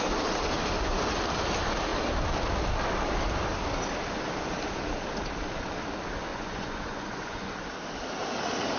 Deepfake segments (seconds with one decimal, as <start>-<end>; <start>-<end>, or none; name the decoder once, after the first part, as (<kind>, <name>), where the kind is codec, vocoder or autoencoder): 6.3-7.5 (vocoder, Vocos)